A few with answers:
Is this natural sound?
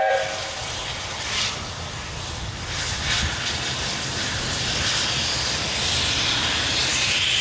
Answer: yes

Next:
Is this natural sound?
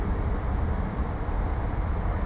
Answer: yes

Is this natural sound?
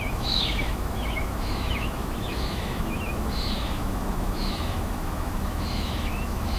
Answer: no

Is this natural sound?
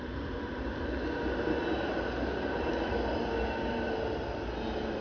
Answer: yes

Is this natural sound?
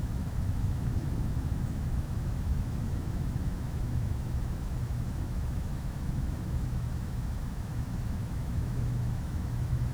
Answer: no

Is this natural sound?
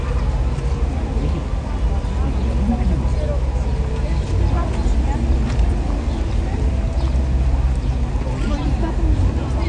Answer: yes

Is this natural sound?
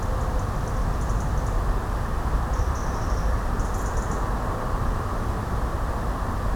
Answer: yes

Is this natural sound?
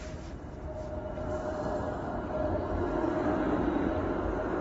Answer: yes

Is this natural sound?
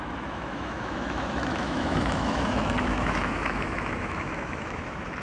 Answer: no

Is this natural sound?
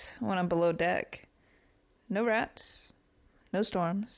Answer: yes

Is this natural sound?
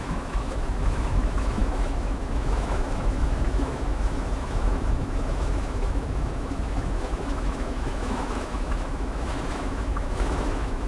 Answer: no